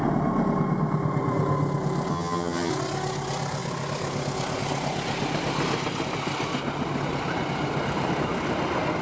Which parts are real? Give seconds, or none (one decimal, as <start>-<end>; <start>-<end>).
0.0-2.1; 2.7-9.0